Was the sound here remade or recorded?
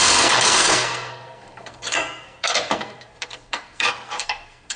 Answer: remade